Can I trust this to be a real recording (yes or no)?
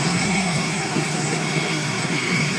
no